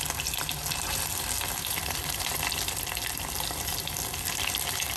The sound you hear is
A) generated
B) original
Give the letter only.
B